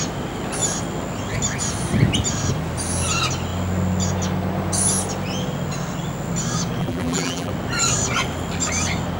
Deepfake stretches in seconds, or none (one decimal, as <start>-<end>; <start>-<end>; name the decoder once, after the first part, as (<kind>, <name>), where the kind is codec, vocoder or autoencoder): 6.8-7.5 (vocoder, BigVGAN v2)